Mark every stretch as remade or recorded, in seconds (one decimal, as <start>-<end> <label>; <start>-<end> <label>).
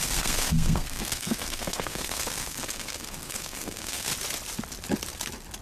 0.0-4.1 remade; 4.1-5.6 recorded